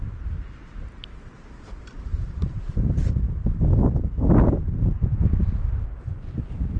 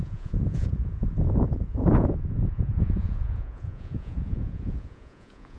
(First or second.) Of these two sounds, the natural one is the first